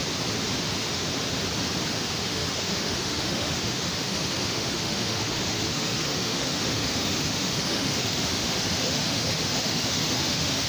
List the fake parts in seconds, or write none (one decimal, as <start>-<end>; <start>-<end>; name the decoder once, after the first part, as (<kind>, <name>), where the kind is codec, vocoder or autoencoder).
0.7-1.1 (autoencoder, DAC-VAE); 1.9-10.7